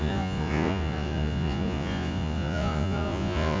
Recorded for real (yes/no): no